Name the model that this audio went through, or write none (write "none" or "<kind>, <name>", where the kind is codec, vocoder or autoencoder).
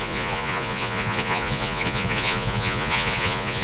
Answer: vocoder, Vocos